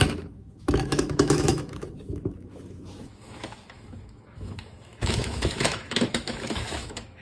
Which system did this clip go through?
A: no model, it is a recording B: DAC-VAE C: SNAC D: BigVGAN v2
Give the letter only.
B